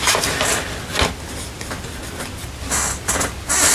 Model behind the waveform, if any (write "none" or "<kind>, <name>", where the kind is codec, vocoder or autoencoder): none